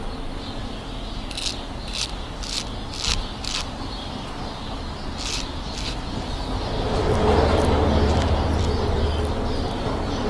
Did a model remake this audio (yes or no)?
no